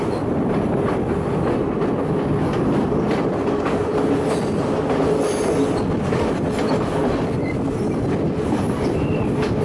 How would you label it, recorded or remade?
recorded